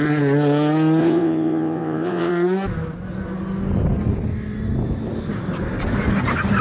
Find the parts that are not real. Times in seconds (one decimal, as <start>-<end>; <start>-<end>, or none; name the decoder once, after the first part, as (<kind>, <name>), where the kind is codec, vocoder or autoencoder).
1.0-2.3 (vocoder, WaveNeXt)